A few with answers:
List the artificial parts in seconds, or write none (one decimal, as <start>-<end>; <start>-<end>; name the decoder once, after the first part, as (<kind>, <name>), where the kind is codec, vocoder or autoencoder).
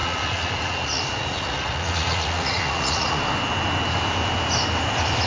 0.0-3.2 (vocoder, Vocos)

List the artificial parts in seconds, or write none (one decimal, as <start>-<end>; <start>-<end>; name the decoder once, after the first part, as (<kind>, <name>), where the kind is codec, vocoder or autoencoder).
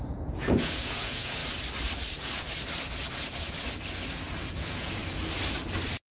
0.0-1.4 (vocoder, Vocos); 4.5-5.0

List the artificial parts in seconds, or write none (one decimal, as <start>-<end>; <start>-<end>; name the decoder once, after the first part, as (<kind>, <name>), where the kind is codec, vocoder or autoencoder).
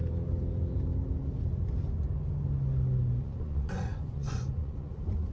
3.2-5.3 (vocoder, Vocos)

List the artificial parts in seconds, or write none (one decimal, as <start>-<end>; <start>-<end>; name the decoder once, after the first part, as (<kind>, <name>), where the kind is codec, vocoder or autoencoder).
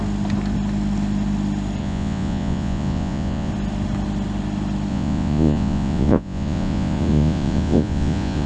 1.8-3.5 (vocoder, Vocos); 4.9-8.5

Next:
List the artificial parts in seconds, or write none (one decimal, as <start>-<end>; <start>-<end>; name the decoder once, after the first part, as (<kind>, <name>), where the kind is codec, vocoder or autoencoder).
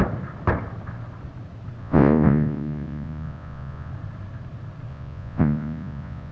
1.8-3.9 (vocoder, Vocos); 4.9-6.3